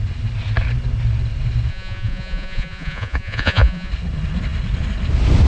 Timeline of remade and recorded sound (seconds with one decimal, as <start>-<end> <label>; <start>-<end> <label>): 0.0-1.7 recorded; 1.7-3.9 remade; 3.9-5.5 recorded